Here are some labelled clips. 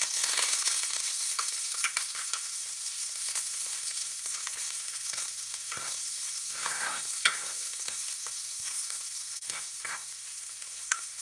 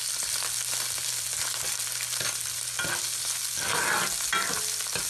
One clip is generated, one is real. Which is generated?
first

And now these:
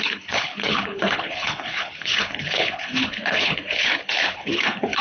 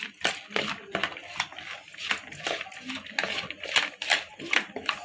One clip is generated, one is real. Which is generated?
first